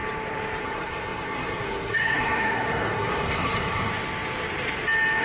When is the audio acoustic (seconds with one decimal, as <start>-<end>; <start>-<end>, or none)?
0.0-0.6; 3.9-5.2

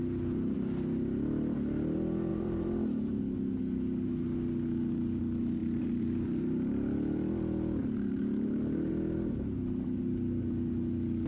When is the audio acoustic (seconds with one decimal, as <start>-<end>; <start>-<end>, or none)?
0.0-2.3; 3.2-5.6; 6.7-7.8; 8.9-11.3

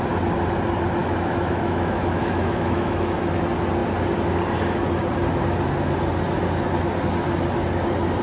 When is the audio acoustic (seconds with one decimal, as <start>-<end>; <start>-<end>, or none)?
0.0-1.0; 3.4-8.2

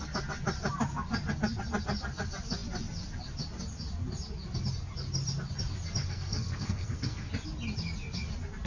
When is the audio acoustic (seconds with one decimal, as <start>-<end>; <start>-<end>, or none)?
0.0-6.0; 7.3-8.7

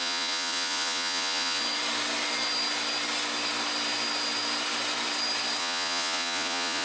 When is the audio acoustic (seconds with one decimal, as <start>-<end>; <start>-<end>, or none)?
1.6-5.6

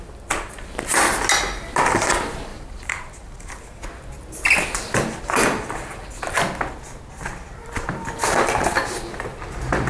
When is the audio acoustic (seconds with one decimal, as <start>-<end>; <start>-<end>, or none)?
0.0-2.5; 3.5-9.9

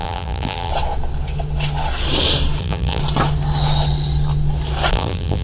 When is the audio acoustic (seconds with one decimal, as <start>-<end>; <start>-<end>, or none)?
0.7-2.6; 3.0-4.9

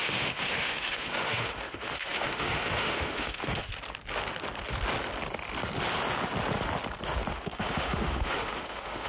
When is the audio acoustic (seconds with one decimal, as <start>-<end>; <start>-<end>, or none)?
3.7-7.3